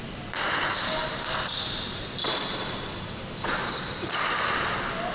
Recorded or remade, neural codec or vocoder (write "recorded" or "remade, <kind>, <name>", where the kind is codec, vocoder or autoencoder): recorded